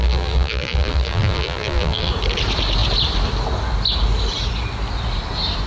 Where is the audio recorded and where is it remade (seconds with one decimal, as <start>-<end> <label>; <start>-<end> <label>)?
0.0-2.1 remade; 2.1-5.7 recorded